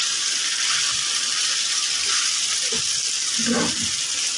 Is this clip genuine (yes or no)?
yes